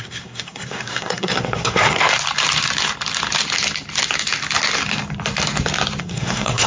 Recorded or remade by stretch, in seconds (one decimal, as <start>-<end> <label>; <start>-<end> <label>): 0.0-2.0 remade; 2.0-6.0 recorded; 6.0-6.7 remade